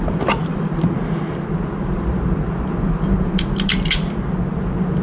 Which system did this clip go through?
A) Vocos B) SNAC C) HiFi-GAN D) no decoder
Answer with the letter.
D